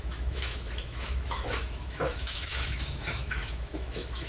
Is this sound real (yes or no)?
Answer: no